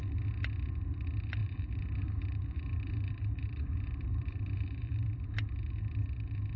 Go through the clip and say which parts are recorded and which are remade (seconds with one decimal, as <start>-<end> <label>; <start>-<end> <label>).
0.0-1.4 recorded; 1.4-5.2 remade; 5.2-6.6 recorded